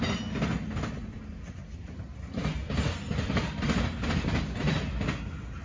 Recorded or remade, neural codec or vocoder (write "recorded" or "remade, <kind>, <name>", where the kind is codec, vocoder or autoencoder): recorded